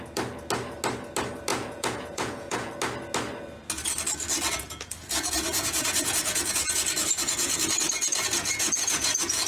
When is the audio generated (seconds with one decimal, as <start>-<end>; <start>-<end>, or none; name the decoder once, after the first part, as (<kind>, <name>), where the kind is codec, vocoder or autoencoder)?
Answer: 1.5-2.7 (vocoder, Vocos); 4.5-9.5